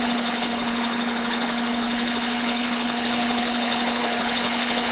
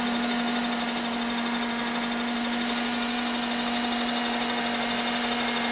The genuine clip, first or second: second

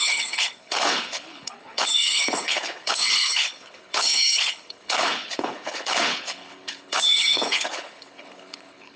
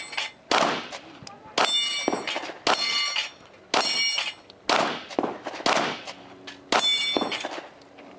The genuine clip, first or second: second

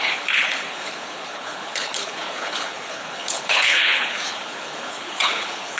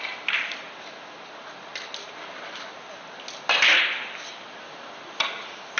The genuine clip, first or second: second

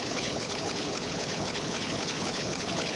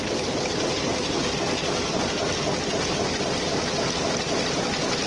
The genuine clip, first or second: second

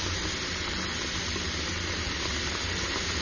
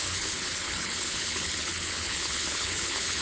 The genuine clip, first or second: first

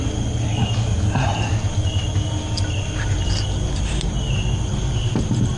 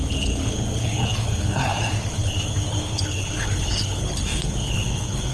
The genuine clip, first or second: first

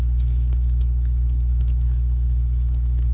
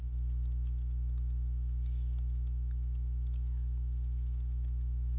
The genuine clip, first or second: second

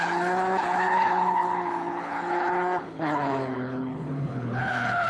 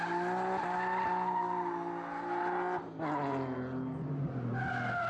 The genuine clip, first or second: second